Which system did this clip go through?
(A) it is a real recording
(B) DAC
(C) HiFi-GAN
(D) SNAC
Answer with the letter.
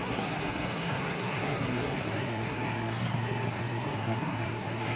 D